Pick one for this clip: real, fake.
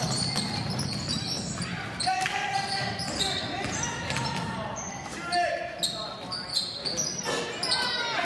real